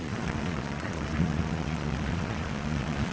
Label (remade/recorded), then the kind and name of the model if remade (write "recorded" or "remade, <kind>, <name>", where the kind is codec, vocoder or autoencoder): remade, vocoder, Vocos